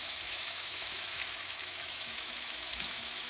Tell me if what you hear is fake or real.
fake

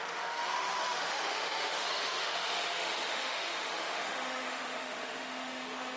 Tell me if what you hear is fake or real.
fake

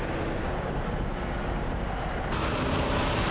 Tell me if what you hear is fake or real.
real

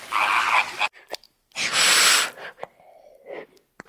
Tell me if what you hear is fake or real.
real